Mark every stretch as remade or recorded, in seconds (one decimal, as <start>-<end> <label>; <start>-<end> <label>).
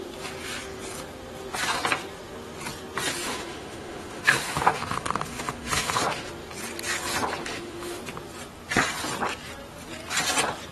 0.0-3.2 recorded; 3.2-6.3 remade; 6.3-7.4 recorded; 7.4-8.0 remade; 8.0-10.7 recorded